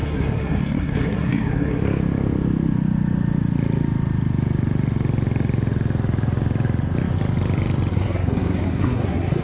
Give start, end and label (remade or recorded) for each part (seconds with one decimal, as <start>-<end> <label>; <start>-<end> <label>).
0.0-1.8 remade; 1.8-7.9 recorded; 7.9-9.4 remade